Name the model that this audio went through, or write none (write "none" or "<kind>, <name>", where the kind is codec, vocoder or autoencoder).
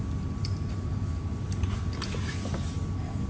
none